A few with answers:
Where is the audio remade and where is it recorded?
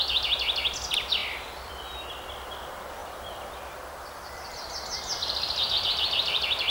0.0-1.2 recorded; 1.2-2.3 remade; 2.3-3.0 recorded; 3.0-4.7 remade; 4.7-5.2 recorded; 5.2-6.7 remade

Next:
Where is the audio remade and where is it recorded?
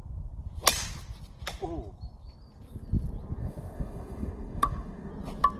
0.0-3.4 recorded; 3.4-5.1 remade; 5.1-5.6 recorded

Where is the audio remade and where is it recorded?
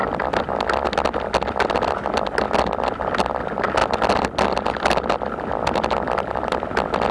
0.0-7.1 recorded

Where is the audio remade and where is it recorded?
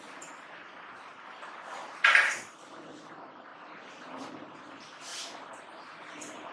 0.0-1.8 recorded; 1.8-2.8 remade; 2.8-5.1 recorded; 5.1-5.8 remade; 5.8-6.5 recorded